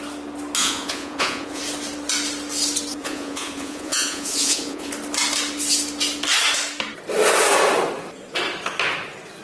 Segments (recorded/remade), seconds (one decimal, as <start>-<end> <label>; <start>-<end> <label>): 0.0-0.6 recorded; 0.6-1.6 remade; 1.6-3.0 recorded; 3.0-4.9 remade; 4.9-9.4 recorded